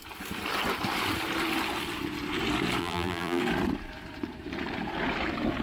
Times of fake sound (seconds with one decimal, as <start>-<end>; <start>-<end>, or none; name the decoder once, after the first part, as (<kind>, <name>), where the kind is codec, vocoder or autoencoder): 2.8-3.4 (vocoder, BigVGAN v2)